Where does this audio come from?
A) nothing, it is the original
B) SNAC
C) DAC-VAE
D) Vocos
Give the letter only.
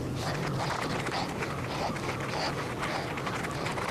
A